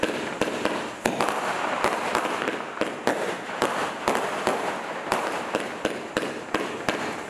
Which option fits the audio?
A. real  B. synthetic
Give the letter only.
A